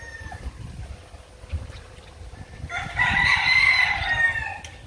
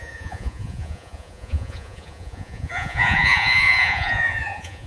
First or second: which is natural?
first